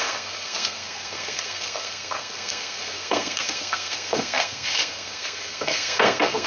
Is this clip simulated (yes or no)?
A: yes